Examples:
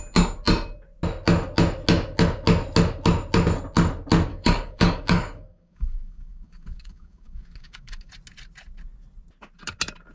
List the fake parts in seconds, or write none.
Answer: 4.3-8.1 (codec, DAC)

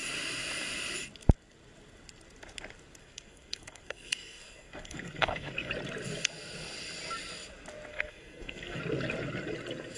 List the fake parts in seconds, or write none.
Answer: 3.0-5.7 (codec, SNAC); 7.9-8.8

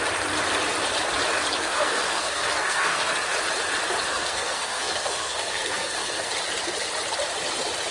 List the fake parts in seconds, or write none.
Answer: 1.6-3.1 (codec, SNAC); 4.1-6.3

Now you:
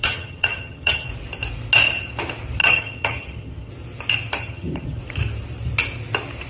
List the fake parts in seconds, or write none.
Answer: 0.0-1.1 (vocoder, HiFi-GAN); 2.6-3.7; 4.4-5.0

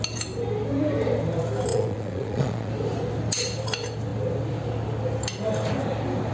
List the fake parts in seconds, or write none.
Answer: 1.7-2.7 (vocoder, Vocos)